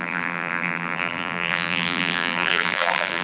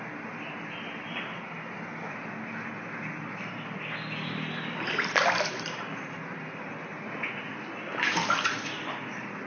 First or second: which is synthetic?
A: first